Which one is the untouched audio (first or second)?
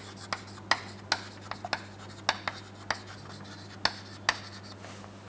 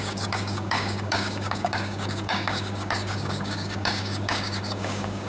first